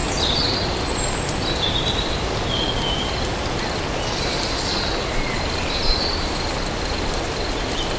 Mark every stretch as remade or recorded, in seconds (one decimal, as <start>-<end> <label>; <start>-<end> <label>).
0.0-8.0 recorded